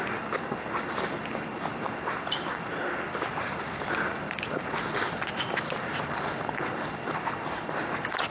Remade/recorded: recorded